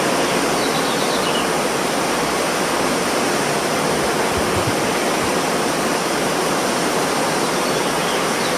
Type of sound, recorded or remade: recorded